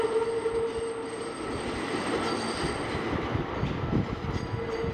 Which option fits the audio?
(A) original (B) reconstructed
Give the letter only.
A